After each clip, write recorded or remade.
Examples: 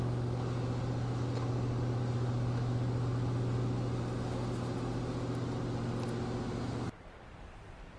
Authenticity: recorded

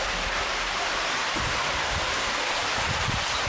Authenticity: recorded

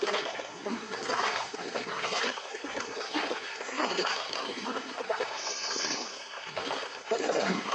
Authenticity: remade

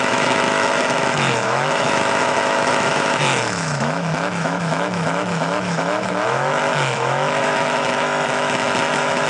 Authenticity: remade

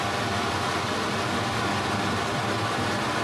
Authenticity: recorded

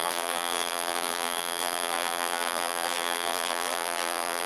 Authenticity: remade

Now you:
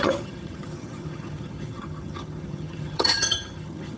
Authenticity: remade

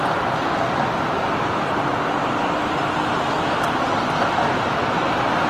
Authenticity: recorded